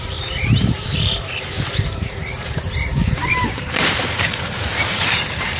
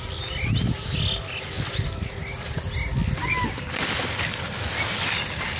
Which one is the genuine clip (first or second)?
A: second